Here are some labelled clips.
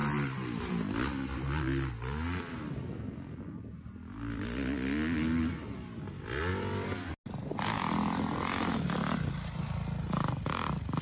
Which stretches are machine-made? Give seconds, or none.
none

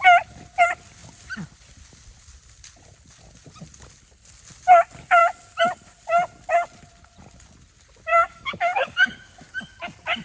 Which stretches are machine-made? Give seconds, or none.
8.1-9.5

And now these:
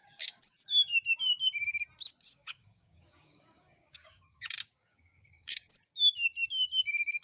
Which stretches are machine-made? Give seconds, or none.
0.0-1.0; 2.3-5.8

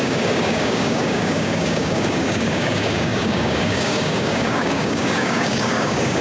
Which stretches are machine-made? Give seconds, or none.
0.0-6.2

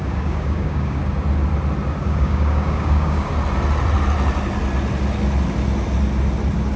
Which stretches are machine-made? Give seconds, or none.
0.0-1.0; 2.0-3.3

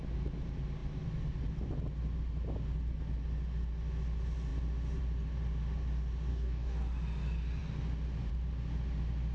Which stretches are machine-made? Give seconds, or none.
6.3-6.8

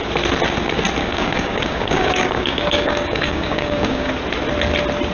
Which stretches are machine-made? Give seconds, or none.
1.0-4.1